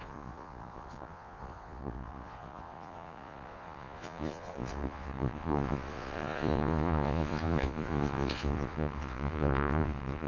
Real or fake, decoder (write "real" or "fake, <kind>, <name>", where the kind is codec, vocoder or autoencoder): fake, vocoder, Vocos